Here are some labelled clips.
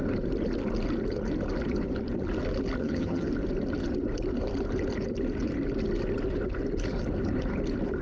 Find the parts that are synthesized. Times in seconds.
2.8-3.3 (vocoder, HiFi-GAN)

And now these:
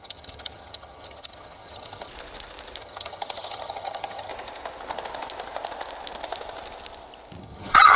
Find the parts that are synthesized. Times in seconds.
0.0-2.1 (vocoder, HiFi-GAN); 2.8-4.3; 7.4-8.0

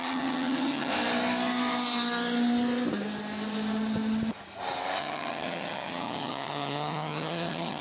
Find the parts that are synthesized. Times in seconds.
0.0-0.9 (vocoder, HiFi-GAN); 5.0-7.8

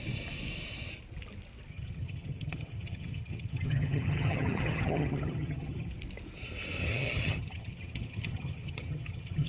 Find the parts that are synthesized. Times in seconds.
1.7-5.9 (vocoder, HiFi-GAN); 6.8-9.5

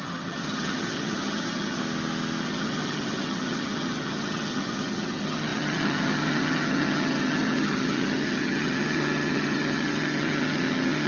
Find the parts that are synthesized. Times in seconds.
0.0-1.8 (vocoder, HiFi-GAN); 2.4-11.1

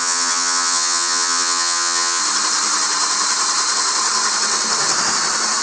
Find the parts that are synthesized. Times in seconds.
0.0-2.2 (vocoder, HiFi-GAN)

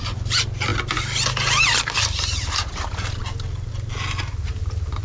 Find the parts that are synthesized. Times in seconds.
none